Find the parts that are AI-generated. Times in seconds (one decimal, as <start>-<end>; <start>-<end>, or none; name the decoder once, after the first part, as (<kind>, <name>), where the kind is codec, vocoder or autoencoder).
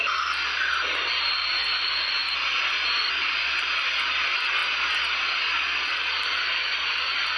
none